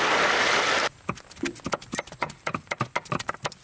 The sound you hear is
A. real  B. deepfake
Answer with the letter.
A